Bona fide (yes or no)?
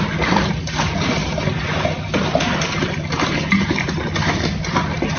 yes